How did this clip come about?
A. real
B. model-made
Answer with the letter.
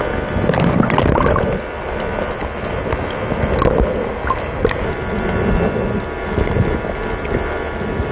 A